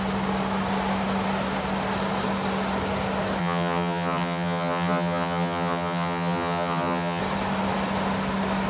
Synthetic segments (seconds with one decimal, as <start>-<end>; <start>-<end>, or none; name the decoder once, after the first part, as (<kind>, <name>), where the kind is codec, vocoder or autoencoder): 3.4-7.2 (vocoder, HiFi-GAN)